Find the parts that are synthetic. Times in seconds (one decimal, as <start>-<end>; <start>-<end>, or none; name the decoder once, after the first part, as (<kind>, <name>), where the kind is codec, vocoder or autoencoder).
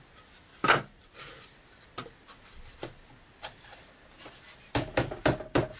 none